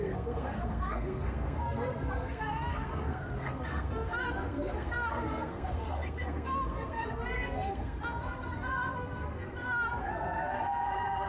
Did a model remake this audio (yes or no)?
yes